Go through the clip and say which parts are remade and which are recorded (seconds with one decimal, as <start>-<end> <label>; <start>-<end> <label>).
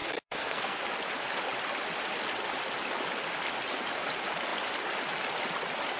0.0-0.8 remade; 0.8-6.0 recorded